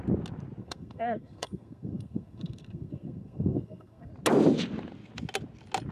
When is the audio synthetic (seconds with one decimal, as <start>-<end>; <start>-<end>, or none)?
0.6-4.1